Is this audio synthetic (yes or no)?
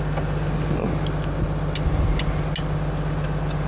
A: no